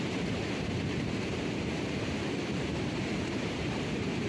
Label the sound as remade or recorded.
remade